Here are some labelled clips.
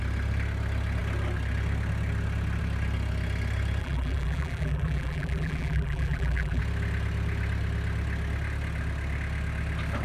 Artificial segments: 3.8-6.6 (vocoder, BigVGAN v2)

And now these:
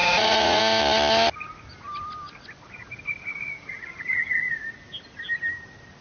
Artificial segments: 0.0-0.6 (vocoder, Vocos); 3.3-4.6

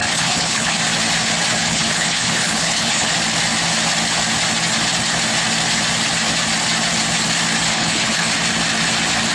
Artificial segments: 0.0-0.8 (codec, HILCodec); 1.6-3.1; 7.7-8.3

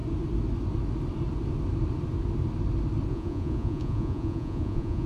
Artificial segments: 3.1-5.1 (vocoder, Vocos)

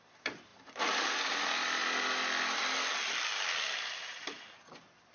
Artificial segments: none

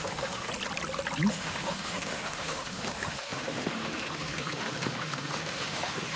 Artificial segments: 0.0-0.5 (autoencoder, DAC-VAE); 1.3-6.2